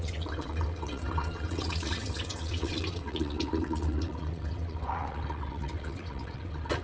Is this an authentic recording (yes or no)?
no